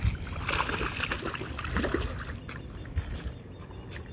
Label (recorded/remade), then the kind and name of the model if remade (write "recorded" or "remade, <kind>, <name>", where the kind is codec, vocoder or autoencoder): recorded